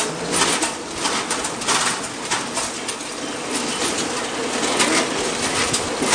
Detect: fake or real real